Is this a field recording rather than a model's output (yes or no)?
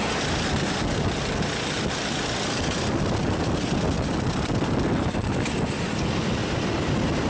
yes